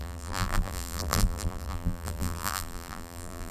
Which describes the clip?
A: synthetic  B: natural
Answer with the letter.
A